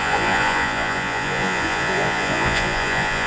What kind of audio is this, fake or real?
fake